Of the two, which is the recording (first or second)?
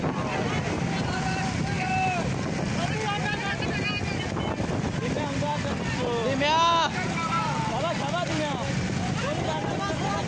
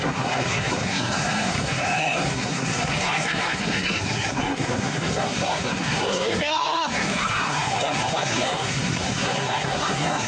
first